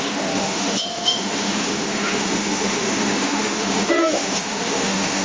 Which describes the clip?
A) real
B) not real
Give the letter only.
B